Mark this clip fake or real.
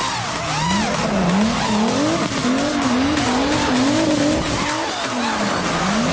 real